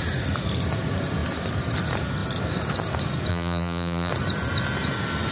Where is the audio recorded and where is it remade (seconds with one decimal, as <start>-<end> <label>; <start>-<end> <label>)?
0.0-3.3 recorded; 3.3-4.1 remade; 4.1-5.3 recorded